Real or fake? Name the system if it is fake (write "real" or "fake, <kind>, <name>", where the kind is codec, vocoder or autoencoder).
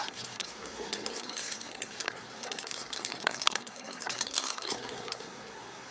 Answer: fake, codec, SNAC